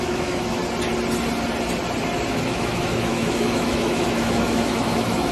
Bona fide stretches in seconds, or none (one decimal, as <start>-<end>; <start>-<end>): 0.6-2.3